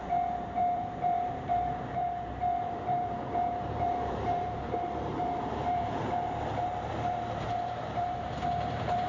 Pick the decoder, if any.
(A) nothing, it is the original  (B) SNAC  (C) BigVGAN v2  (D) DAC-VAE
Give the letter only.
C